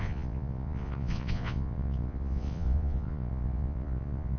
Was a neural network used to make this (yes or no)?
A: yes